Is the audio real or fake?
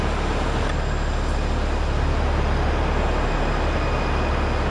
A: real